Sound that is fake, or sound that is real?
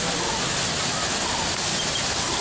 real